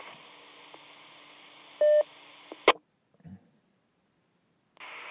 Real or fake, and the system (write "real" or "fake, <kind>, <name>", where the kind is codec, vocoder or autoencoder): real